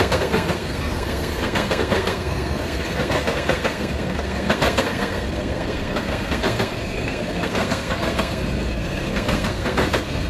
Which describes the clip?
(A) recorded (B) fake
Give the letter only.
B